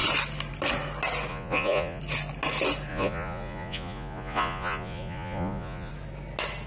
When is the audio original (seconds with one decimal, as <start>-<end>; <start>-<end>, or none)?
0.0-1.3; 2.0-2.9; 5.9-6.7